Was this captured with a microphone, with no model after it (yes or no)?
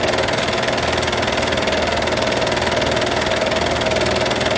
yes